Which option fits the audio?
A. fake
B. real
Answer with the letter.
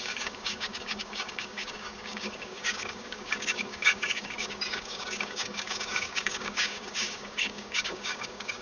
A